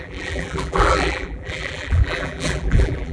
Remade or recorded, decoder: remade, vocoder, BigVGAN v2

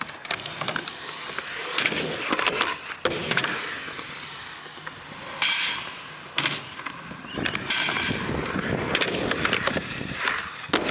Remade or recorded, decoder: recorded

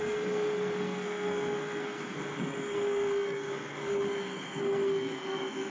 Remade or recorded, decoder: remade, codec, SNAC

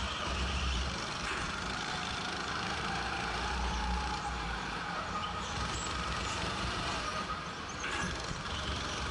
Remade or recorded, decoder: remade, vocoder, BigVGAN v2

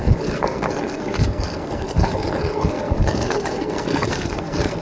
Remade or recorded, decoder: remade, codec, SNAC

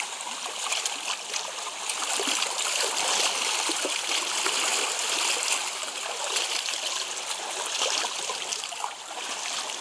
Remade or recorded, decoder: recorded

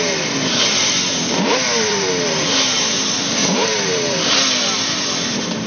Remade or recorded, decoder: remade, vocoder, BigVGAN v2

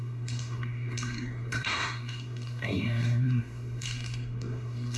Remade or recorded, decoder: remade, codec, SNAC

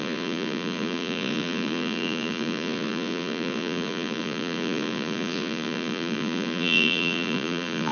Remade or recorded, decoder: remade, vocoder, Vocos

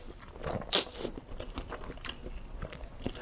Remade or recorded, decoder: recorded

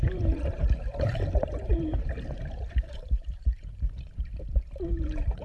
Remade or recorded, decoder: remade, vocoder, BigVGAN v2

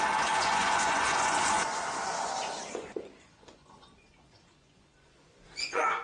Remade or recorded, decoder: remade, vocoder, Vocos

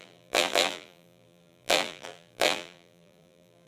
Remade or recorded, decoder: remade, vocoder, BigVGAN v2